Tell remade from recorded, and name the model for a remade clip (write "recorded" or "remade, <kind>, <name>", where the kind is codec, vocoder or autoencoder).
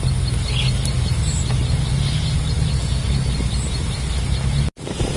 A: recorded